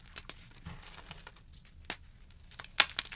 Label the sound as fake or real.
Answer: real